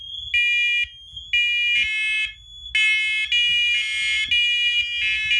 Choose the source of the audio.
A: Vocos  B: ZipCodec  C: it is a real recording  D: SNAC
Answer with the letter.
C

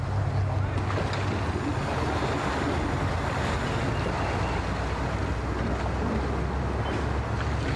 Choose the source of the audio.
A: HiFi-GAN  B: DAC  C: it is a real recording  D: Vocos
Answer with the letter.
C